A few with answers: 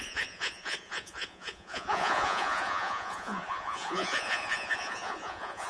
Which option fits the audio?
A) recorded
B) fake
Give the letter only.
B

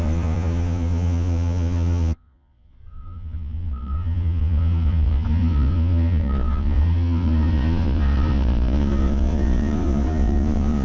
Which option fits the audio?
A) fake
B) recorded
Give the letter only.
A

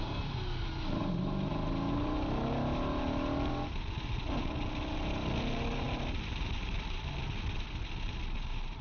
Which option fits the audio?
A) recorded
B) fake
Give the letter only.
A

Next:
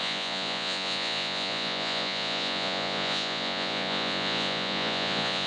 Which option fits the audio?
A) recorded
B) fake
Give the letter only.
B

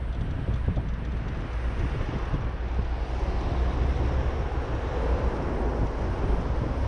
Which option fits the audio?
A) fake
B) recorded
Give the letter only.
B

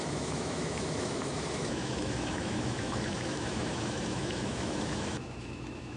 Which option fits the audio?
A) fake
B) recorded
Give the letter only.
A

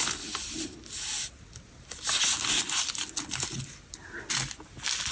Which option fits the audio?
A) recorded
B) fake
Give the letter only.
A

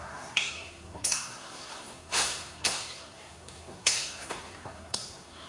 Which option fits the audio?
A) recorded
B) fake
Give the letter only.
B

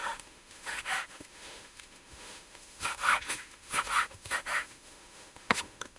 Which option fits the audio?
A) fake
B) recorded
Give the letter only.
A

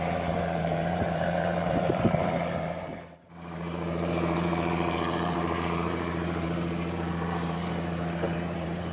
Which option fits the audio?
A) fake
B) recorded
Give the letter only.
A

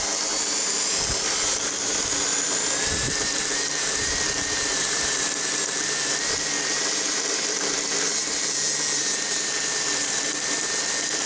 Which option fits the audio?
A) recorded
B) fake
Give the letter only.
A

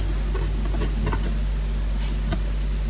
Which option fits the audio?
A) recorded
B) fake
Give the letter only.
A